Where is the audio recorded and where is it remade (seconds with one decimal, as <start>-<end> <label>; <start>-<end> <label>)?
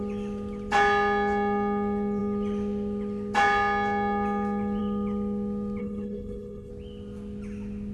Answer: 0.0-5.8 recorded; 5.8-6.7 remade; 6.7-7.9 recorded